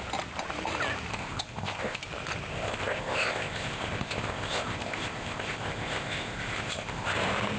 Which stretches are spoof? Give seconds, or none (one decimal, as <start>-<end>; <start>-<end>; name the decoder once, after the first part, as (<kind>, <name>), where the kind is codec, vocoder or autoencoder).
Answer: 1.1-2.0 (codec, ZipCodec); 2.5-7.1